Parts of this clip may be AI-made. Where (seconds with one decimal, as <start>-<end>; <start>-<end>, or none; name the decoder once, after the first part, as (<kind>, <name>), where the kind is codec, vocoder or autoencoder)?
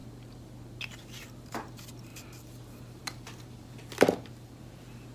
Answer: none